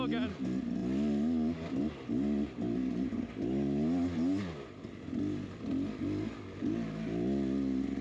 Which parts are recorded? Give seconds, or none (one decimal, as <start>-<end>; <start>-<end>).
0.0-8.0